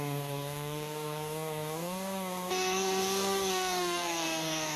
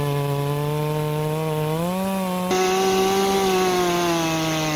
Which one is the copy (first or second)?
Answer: first